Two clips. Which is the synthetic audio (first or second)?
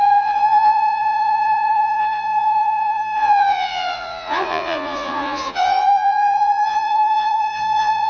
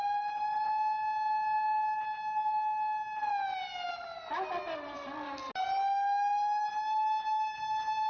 first